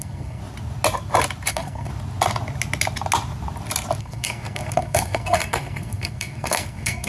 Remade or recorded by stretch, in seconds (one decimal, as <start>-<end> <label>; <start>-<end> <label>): 0.0-0.4 remade; 0.4-1.5 recorded; 1.5-1.9 remade; 1.9-4.0 recorded; 4.0-7.1 remade

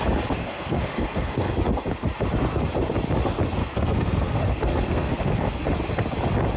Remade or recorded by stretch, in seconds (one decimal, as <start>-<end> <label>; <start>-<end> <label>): 0.0-0.4 recorded; 0.4-1.5 remade; 1.5-3.6 recorded; 3.6-5.6 remade; 5.6-6.6 recorded